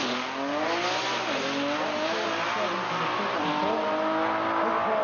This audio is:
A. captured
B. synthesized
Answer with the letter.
A